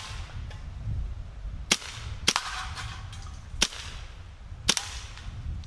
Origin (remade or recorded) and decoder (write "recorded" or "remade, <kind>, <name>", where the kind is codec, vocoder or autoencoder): recorded